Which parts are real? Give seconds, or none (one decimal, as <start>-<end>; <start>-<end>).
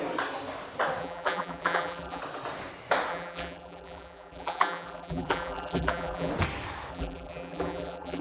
0.0-1.0; 2.2-3.1; 6.3-6.9